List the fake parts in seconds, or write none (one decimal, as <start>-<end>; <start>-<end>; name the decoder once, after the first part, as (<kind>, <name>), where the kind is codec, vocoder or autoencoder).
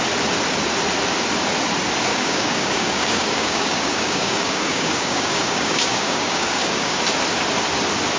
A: 2.1-7.0 (codec, DAC)